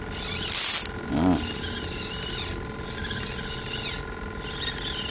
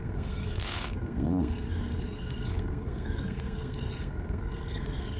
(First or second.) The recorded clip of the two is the first